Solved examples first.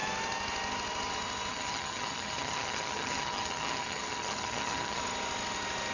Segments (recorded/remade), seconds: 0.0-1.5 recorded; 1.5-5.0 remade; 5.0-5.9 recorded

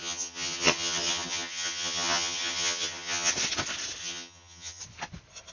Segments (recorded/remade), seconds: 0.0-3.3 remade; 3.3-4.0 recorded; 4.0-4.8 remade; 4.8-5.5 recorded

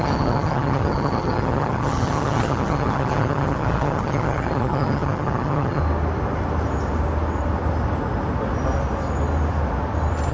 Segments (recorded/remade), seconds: 0.0-5.8 remade; 5.8-10.3 recorded

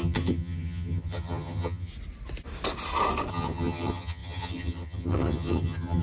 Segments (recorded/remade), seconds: 0.0-1.9 remade; 1.9-3.3 recorded; 3.3-6.0 remade

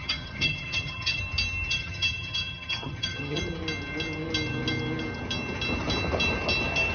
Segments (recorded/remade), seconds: 0.0-1.2 remade; 1.2-1.7 recorded; 1.7-3.4 remade; 3.4-6.9 recorded